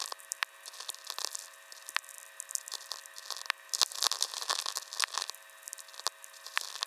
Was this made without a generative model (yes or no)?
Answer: yes